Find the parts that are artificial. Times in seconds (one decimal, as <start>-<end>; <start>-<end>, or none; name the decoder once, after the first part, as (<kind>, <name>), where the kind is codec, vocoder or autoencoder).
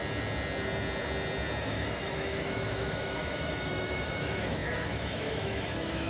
1.6-6.1 (autoencoder, DAC-VAE)